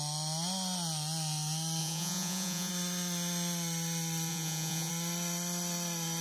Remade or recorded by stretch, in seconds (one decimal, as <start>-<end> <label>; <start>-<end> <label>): 0.0-1.8 recorded; 1.8-2.7 remade; 2.7-4.3 recorded; 4.3-4.9 remade; 4.9-6.2 recorded